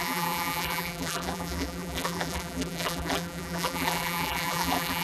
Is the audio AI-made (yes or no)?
yes